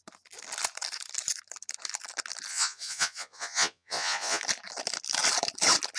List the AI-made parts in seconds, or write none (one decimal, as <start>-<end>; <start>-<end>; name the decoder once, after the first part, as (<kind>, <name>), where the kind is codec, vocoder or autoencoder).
2.5-4.4 (vocoder, Vocos)